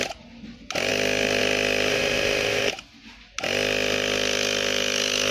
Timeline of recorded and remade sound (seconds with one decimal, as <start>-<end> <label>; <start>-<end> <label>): 0.0-1.9 recorded; 1.9-2.7 remade; 2.7-5.3 recorded